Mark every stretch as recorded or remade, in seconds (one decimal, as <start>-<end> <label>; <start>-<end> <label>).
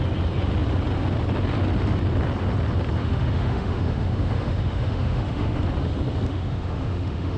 0.0-3.0 recorded; 3.0-5.6 remade; 5.6-6.3 recorded; 6.3-7.4 remade